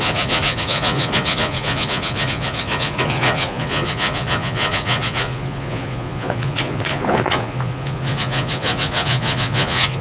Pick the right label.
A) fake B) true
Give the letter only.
A